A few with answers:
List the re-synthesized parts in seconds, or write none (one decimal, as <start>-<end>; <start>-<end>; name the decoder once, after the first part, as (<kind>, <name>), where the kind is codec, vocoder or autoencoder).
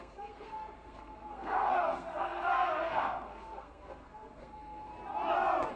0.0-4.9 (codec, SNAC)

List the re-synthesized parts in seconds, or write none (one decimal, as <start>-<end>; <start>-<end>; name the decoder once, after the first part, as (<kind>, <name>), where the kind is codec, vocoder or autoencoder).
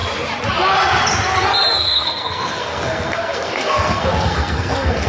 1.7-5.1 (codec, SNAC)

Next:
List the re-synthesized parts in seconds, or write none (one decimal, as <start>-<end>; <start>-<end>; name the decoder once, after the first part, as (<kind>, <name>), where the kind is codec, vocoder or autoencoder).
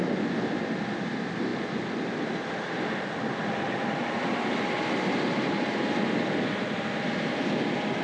none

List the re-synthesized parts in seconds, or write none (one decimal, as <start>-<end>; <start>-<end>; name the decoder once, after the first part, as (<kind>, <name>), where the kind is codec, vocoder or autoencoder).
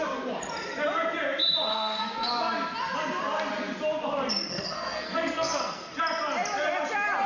1.7-2.3 (codec, SNAC); 4.3-5.9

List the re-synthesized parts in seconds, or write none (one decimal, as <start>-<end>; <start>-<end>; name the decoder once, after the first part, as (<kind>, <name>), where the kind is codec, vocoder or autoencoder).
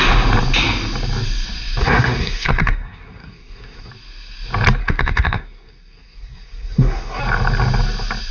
1.8-3.9 (codec, SNAC); 4.8-7.2